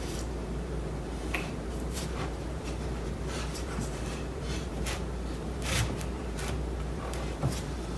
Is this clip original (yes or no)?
no